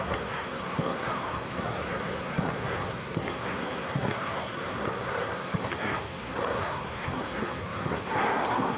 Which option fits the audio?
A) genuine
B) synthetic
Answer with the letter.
B